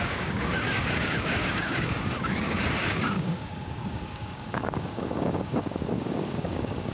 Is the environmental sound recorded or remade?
remade